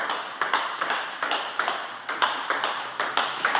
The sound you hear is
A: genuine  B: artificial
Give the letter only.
B